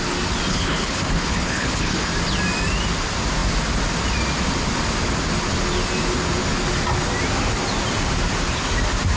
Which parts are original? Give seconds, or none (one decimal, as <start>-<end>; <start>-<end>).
0.0-0.5; 2.1-9.2